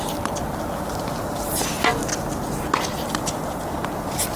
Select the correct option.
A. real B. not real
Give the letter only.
A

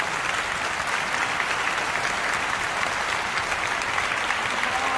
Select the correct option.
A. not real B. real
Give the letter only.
B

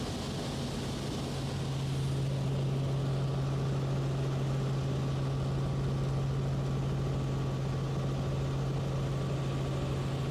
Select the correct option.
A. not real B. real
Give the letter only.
B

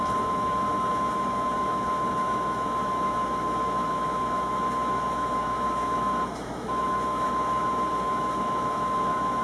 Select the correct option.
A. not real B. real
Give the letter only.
A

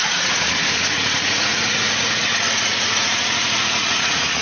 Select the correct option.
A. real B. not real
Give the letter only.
B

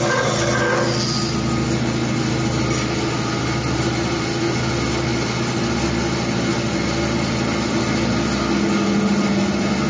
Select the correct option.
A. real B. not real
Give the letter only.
A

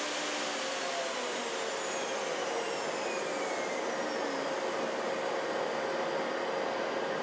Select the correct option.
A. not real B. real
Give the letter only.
B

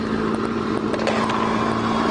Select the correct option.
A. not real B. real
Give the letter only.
B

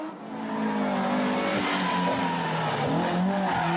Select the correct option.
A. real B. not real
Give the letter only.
A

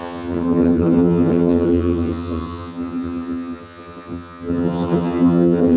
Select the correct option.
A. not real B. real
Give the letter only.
A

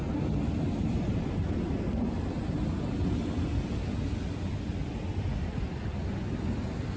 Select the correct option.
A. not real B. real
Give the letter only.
B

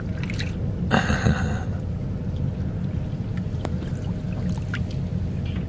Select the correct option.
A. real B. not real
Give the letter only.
A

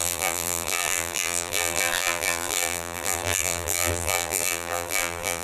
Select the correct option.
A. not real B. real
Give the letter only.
A